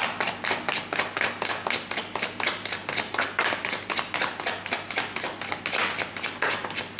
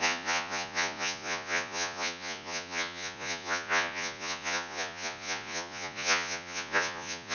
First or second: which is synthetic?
second